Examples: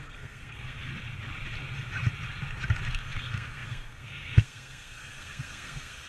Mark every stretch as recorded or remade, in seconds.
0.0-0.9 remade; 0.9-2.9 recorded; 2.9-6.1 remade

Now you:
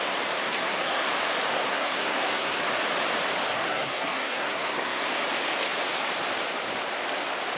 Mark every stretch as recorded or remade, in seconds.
0.0-0.4 recorded; 0.4-1.1 remade; 1.1-1.5 recorded; 1.5-2.6 remade; 2.6-3.5 recorded; 3.5-5.1 remade; 5.1-7.6 recorded

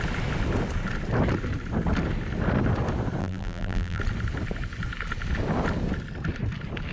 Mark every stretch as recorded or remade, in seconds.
0.0-3.2 recorded; 3.2-4.0 remade; 4.0-6.9 recorded

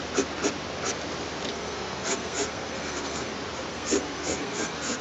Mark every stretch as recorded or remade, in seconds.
0.0-1.5 recorded; 1.5-3.3 remade; 3.3-3.7 recorded; 3.7-5.0 remade

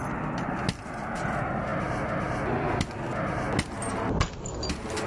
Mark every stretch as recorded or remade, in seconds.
0.0-5.1 recorded

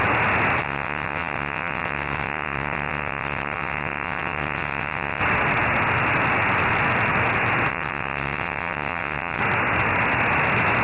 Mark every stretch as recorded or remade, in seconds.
0.0-0.6 recorded; 0.6-5.2 remade; 5.2-7.7 recorded; 7.7-9.4 remade; 9.4-10.8 recorded

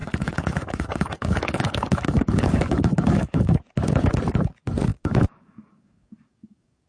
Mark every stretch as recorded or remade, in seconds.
0.0-3.5 remade; 3.5-4.9 recorded; 4.9-6.9 remade

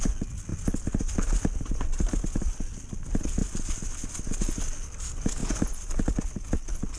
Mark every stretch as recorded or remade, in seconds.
0.0-7.0 recorded